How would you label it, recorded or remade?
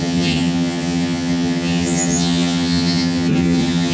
remade